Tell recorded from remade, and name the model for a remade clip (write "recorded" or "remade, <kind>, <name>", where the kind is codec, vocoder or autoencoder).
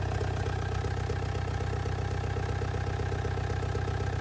recorded